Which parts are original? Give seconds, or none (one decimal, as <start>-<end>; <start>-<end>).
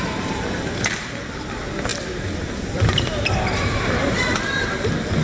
none